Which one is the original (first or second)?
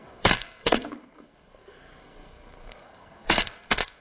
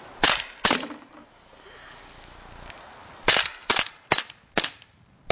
second